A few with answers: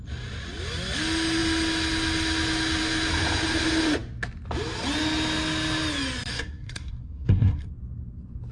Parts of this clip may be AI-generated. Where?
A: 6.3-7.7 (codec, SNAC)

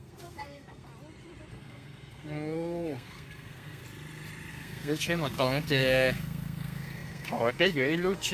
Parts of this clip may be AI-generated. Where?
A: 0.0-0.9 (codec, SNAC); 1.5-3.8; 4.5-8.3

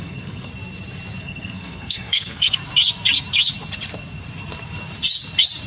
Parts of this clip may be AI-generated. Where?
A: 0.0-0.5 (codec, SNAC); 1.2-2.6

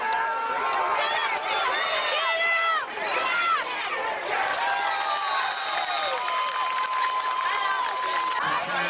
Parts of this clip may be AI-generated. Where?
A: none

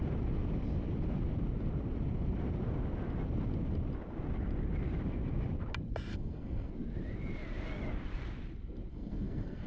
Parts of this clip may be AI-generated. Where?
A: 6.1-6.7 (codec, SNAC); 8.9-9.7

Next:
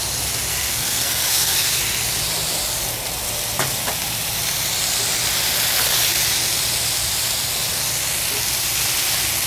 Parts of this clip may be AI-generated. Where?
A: 0.5-1.8 (codec, SNAC)